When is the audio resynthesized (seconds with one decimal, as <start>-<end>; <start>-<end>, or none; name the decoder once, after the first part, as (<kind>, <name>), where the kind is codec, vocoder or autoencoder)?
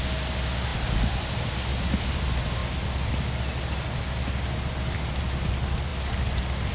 none